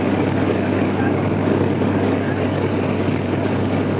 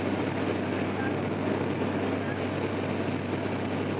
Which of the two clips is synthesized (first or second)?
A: first